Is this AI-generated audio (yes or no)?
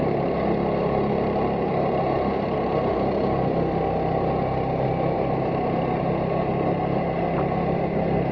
no